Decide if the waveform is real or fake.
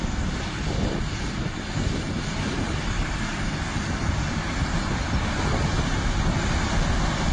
real